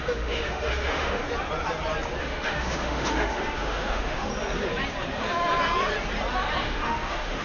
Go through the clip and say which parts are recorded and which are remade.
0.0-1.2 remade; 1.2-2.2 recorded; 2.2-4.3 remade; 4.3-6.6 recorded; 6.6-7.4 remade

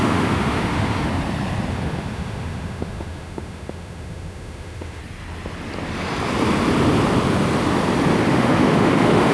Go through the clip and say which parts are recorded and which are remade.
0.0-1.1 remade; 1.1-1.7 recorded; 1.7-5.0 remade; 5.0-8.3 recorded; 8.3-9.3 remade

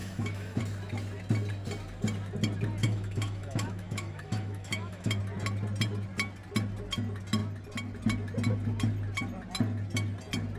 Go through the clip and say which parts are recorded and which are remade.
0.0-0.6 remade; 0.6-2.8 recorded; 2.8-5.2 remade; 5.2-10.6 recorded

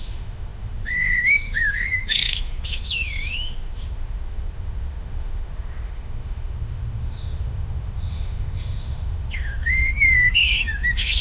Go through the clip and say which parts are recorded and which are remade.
0.0-11.2 remade

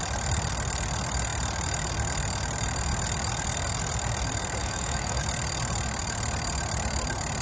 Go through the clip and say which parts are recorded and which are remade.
0.0-4.6 recorded; 4.6-5.2 remade; 5.2-7.4 recorded

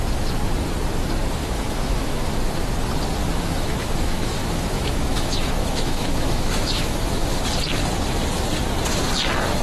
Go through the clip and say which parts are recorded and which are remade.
0.0-1.4 recorded; 1.4-2.3 remade; 2.3-3.2 recorded; 3.2-7.4 remade; 7.4-9.6 recorded

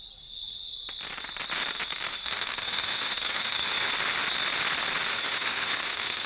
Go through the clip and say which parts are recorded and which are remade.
0.0-2.1 recorded; 2.1-3.9 remade; 3.9-5.1 recorded; 5.1-6.3 remade

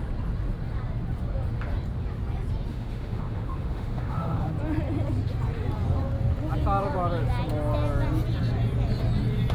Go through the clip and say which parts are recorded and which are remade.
0.0-2.7 recorded; 2.7-4.5 remade; 4.5-9.5 recorded